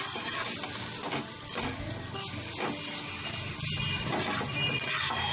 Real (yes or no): yes